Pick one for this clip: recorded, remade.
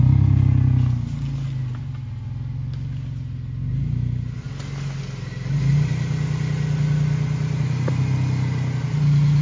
recorded